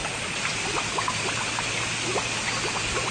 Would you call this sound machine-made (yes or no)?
no